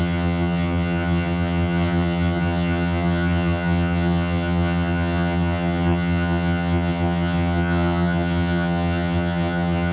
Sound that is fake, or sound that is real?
fake